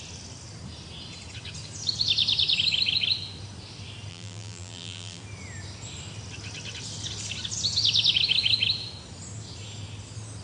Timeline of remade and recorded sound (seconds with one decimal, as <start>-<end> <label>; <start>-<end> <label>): 0.0-4.1 recorded; 4.1-5.2 remade; 5.2-10.4 recorded

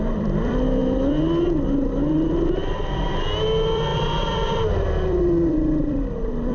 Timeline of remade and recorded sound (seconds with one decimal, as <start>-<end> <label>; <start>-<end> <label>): 0.0-0.8 remade; 0.8-2.1 recorded; 2.1-2.6 remade; 2.6-3.4 recorded; 3.4-6.5 remade